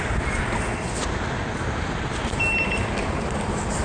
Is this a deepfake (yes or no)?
no